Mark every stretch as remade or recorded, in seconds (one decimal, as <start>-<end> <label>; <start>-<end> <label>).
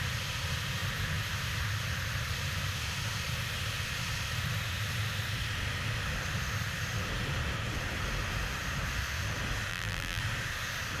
0.0-9.7 recorded; 9.7-10.2 remade; 10.2-11.0 recorded